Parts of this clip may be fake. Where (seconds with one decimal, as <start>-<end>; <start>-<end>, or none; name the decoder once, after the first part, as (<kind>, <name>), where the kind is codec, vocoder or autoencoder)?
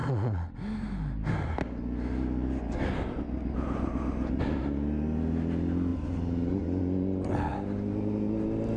none